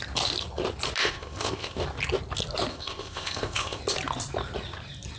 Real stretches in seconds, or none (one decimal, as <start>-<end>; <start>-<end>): 0.0-1.0; 1.8-2.7; 3.8-5.2